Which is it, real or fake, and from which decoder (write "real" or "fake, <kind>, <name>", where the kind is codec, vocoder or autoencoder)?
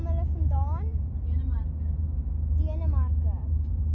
real